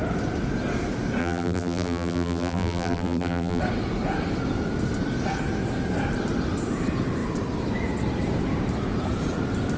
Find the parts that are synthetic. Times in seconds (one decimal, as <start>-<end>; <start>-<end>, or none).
1.2-3.6